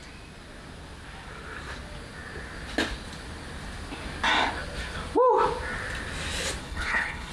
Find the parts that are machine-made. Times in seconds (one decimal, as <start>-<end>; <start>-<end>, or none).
6.6-7.3